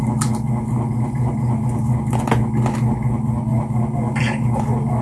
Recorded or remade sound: recorded